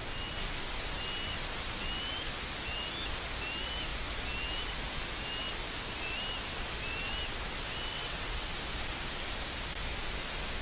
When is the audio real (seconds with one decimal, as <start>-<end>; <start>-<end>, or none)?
0.0-7.9; 8.5-10.6